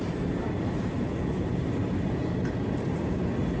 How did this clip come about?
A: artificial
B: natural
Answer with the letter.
B